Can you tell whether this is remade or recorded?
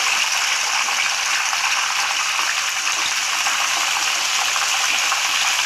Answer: recorded